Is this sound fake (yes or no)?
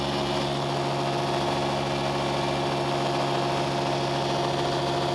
no